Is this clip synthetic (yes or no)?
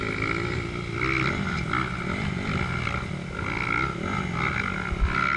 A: no